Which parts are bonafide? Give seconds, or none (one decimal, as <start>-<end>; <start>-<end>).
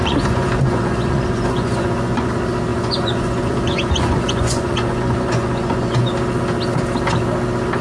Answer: 2.3-2.7; 6.1-7.8